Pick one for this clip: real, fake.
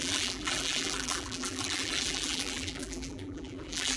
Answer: fake